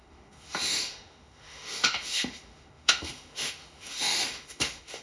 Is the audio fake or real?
fake